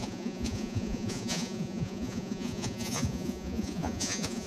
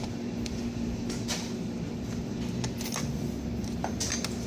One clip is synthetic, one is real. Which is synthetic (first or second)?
first